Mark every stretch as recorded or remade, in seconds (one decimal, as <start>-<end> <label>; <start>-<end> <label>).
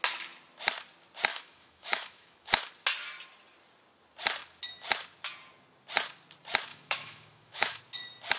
0.0-1.3 recorded; 1.3-2.5 remade; 2.5-6.7 recorded; 6.7-7.8 remade; 7.8-8.4 recorded